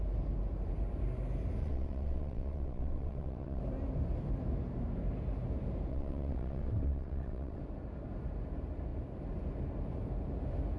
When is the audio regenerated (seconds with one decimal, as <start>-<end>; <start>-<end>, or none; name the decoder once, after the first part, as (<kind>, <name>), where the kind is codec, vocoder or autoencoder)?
1.6-3.6 (vocoder, WaveNeXt); 5.9-7.6